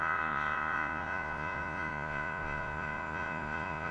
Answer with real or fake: fake